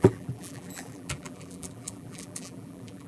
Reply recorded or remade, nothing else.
remade